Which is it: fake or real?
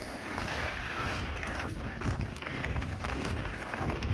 fake